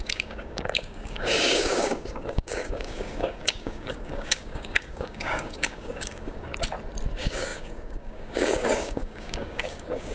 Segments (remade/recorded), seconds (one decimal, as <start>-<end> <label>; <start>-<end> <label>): 0.0-6.5 remade; 6.5-7.1 recorded; 7.1-10.1 remade